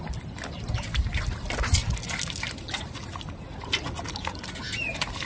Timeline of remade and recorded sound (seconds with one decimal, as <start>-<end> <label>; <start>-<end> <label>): 0.0-5.3 recorded